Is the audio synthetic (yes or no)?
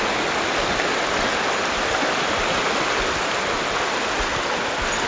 no